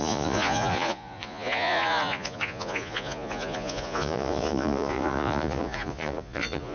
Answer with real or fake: fake